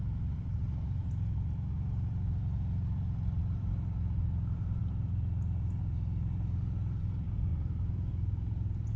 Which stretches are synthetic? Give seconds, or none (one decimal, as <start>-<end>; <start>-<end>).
0.0-9.0